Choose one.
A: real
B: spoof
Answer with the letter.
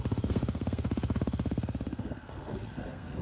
B